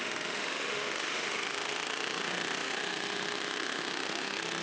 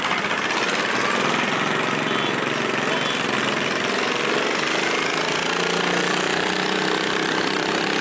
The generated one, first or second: first